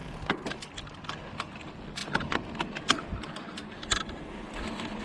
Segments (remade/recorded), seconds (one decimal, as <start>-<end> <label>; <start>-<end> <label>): 0.0-1.3 recorded; 1.3-2.0 remade; 2.0-5.0 recorded